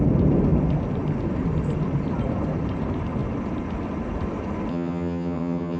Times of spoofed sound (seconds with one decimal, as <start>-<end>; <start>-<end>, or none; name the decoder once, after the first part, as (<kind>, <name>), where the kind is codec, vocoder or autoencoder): 4.7-5.8 (vocoder, HiFi-GAN)